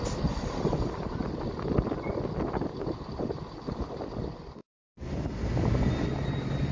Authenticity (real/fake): real